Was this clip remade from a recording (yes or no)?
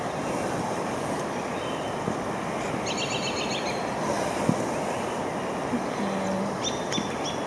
no